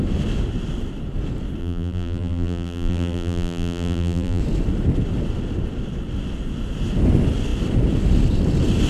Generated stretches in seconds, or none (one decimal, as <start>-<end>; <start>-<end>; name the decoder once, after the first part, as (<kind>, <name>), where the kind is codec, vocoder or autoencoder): 1.6-4.4 (vocoder, BigVGAN v2)